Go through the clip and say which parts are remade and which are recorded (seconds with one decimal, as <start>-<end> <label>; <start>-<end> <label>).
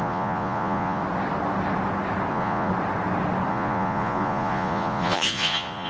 0.0-1.0 remade; 1.0-2.3 recorded; 2.3-2.7 remade; 2.7-3.5 recorded; 3.5-5.9 remade